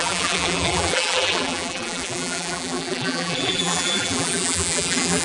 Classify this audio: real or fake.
fake